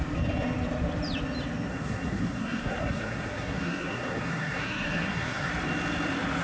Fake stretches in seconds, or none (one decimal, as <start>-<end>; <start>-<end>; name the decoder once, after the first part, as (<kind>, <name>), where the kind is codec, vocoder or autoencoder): 1.7-5.5 (codec, SNAC)